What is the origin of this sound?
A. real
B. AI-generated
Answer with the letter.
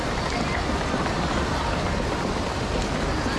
A